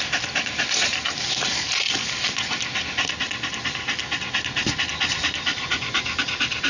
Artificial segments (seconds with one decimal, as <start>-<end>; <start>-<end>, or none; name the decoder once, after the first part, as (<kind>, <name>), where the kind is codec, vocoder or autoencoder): 5.6-6.2 (vocoder, Vocos)